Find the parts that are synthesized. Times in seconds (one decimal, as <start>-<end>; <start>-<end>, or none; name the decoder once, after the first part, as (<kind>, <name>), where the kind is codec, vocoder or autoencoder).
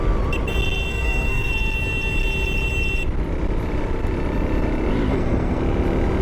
0.9-1.5 (codec, SNAC); 5.1-5.6